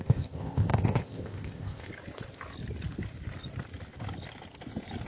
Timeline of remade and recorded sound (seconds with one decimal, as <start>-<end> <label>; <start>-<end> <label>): 0.0-1.9 remade; 1.9-5.1 recorded